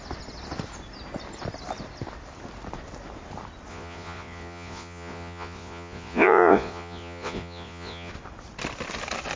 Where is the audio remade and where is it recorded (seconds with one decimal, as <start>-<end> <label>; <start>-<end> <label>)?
0.0-3.7 recorded; 3.7-8.1 remade; 8.1-9.4 recorded